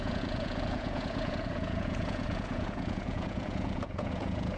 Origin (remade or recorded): remade